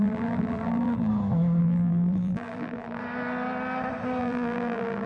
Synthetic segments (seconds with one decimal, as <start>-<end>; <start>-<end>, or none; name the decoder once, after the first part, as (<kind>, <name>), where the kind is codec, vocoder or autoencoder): 0.0-1.1 (vocoder, BigVGAN v2); 1.6-3.0; 4.2-5.1